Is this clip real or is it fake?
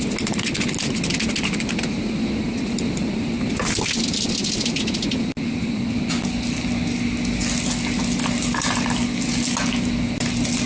real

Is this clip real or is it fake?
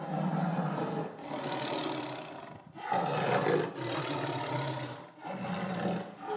real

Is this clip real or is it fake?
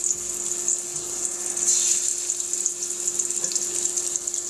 real